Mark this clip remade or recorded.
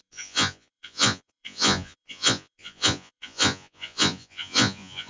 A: remade